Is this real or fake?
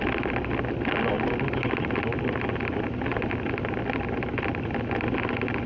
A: real